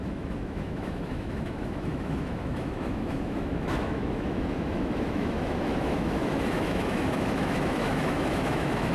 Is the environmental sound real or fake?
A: fake